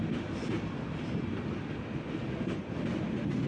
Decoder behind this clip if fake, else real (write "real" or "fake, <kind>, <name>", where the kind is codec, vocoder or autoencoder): real